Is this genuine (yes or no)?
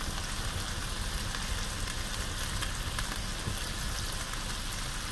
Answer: yes